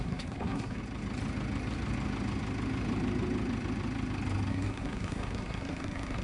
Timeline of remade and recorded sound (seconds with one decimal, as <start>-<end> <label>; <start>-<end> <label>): 0.0-0.8 remade; 0.8-4.5 recorded; 4.5-6.2 remade